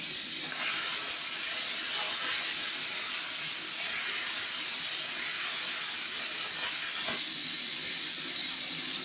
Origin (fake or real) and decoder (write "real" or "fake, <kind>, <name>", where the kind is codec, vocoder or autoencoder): real